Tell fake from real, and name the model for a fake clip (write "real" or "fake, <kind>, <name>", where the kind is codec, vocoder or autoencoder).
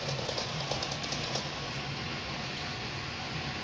fake, vocoder, Vocos